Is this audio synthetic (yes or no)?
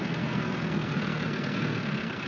yes